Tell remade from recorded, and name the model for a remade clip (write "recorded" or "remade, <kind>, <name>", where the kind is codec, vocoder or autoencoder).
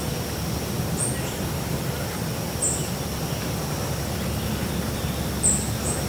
recorded